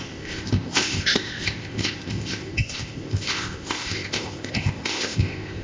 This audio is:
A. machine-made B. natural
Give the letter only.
A